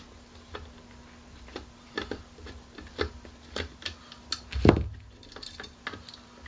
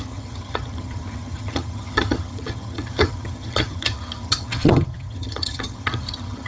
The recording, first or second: first